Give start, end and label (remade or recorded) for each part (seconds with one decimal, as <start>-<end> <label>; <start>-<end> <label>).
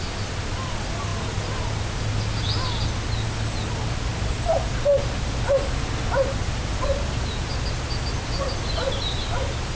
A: 0.0-9.7 recorded